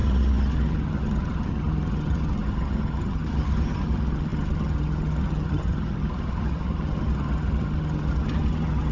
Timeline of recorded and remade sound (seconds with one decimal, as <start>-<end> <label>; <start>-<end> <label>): 0.0-8.9 remade